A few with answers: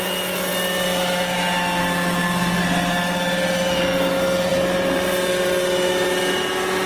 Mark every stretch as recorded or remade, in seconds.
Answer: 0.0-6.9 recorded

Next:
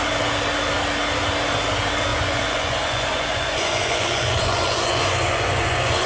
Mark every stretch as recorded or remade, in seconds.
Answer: 0.0-2.1 recorded; 2.1-6.1 remade

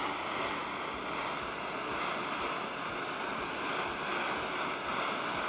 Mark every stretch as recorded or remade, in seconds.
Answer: 0.0-5.5 recorded

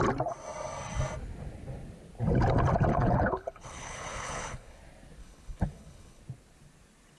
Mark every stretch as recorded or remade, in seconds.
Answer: 0.0-2.9 recorded; 2.9-4.8 remade; 4.8-5.2 recorded; 5.2-6.2 remade; 6.2-7.2 recorded

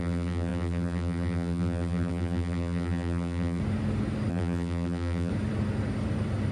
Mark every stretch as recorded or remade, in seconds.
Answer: 0.0-3.6 remade; 3.6-4.3 recorded; 4.3-5.3 remade; 5.3-6.5 recorded

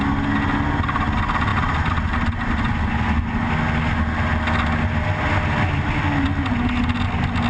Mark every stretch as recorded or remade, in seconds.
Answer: 0.0-7.5 recorded